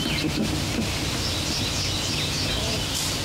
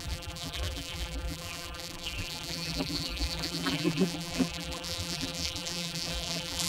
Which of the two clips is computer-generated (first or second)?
second